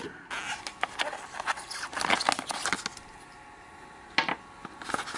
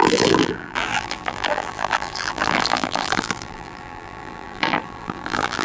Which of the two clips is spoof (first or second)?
second